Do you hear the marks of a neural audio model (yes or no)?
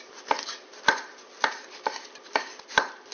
yes